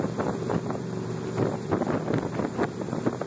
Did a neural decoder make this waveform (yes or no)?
yes